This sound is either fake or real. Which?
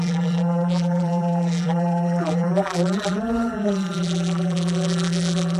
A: fake